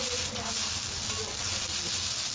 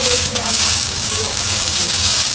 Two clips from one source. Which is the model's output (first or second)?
second